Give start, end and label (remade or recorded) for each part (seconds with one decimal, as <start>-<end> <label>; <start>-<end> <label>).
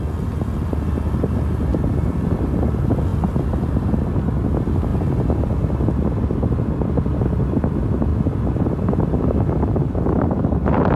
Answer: 0.0-1.7 recorded; 1.7-2.4 remade; 2.4-3.1 recorded; 3.1-3.7 remade; 3.7-11.0 recorded